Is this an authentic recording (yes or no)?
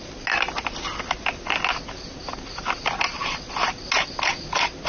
yes